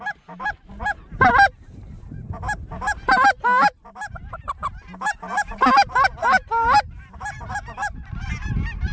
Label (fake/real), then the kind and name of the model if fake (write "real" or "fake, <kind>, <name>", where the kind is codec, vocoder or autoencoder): fake, vocoder, BigVGAN v2